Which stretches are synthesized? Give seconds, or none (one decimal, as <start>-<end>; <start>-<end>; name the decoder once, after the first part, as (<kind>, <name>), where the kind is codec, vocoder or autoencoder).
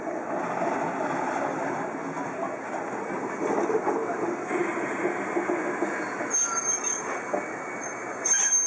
none